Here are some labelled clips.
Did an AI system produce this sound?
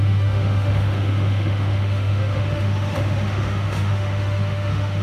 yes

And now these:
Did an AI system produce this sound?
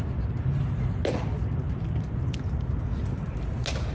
no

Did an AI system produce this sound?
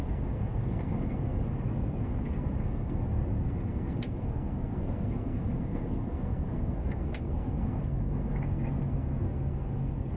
yes